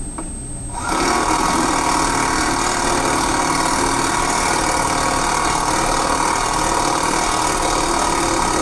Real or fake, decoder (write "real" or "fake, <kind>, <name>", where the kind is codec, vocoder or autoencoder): real